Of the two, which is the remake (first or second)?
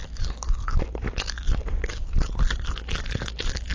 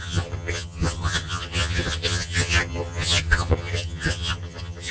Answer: second